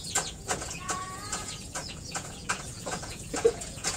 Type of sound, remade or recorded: remade